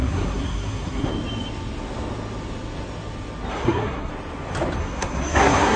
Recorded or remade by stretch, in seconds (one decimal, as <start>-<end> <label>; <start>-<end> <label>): 0.0-1.1 remade; 1.1-3.5 recorded; 3.5-4.1 remade; 4.1-4.8 recorded; 4.8-5.8 remade